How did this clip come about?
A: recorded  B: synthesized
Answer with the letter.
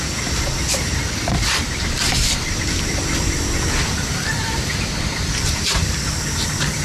B